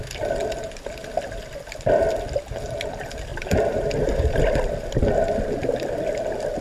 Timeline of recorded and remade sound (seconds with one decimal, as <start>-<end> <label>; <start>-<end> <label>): 0.0-3.3 recorded; 3.3-4.1 remade; 4.1-6.6 recorded